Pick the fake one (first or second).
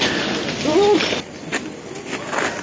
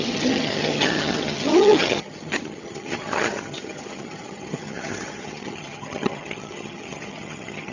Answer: second